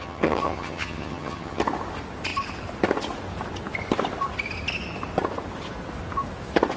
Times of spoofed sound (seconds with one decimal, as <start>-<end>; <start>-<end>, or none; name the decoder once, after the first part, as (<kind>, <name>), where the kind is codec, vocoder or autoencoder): 0.0-1.6 (vocoder, HiFi-GAN)